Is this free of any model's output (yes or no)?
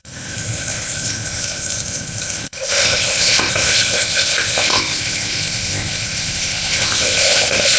no